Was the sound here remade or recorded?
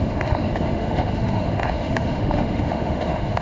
remade